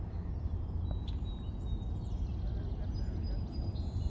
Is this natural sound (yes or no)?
yes